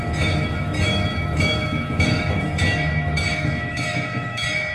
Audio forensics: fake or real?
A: fake